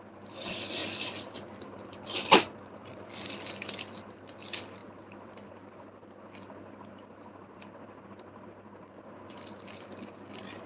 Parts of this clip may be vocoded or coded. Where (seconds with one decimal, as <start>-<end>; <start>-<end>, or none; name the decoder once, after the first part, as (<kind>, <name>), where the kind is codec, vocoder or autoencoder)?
none